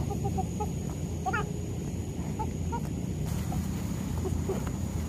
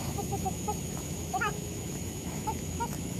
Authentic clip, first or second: first